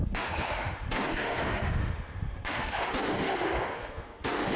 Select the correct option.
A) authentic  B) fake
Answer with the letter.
B